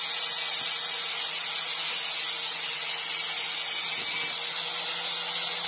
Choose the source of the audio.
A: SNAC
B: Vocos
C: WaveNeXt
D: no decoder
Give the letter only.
D